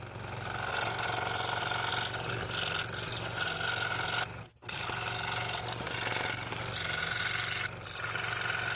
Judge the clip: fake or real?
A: real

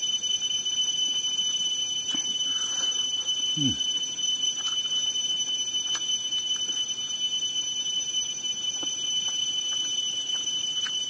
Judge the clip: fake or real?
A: real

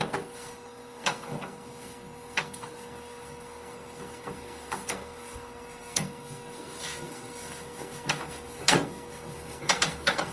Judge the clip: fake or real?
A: fake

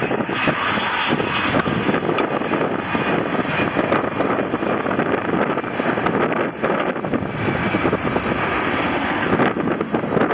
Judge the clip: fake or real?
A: real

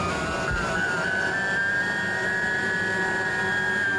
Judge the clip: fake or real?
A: real